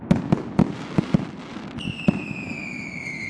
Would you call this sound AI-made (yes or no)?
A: no